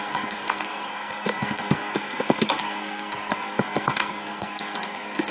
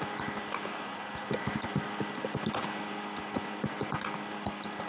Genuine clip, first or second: second